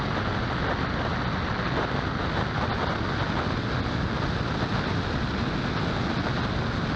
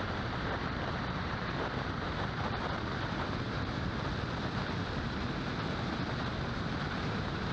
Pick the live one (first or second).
first